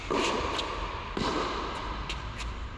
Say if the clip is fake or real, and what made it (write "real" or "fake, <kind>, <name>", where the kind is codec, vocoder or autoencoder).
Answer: real